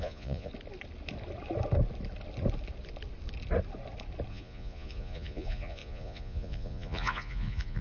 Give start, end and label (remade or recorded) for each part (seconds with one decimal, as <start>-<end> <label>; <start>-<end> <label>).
0.0-0.5 remade; 0.5-4.3 recorded; 4.3-7.8 remade